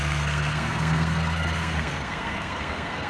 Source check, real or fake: fake